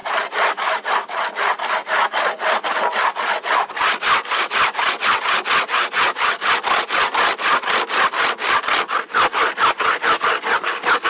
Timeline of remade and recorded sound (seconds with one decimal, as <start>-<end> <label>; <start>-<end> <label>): 0.0-11.1 recorded

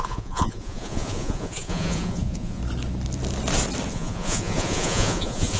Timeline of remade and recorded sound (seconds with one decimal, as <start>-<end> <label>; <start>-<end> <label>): 0.0-2.6 remade; 2.6-3.9 recorded; 3.9-5.6 remade

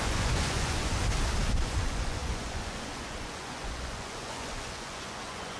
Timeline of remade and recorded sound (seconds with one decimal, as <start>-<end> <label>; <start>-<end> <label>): 0.0-1.0 remade; 1.0-1.6 recorded; 1.6-5.6 remade

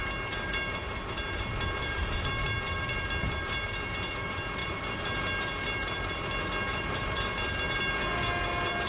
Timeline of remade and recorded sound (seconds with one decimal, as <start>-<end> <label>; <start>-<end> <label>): 0.0-8.9 recorded

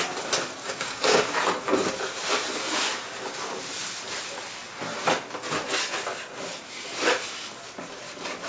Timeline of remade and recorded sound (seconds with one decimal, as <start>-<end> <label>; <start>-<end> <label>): 0.0-0.6 recorded; 0.6-1.2 remade; 1.2-8.5 recorded

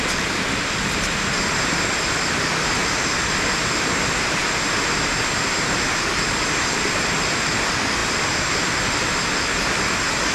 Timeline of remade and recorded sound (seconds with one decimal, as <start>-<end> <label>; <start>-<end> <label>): 0.0-2.8 recorded; 2.8-3.3 remade; 3.3-10.3 recorded

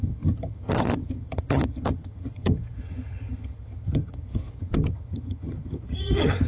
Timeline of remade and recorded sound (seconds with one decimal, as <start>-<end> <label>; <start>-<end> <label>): 0.0-6.5 remade